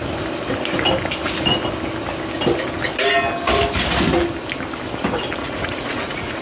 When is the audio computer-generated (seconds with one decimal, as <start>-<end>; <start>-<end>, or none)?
5.4-6.4